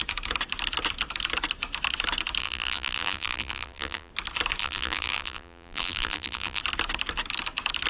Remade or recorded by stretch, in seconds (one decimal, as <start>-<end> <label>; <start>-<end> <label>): 0.0-2.4 recorded; 2.4-4.1 remade; 4.1-4.6 recorded; 4.6-6.6 remade; 6.6-7.9 recorded